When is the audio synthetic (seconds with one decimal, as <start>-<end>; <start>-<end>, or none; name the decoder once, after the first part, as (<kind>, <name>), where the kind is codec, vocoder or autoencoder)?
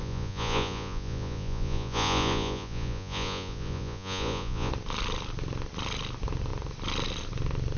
0.0-4.7 (vocoder, Vocos)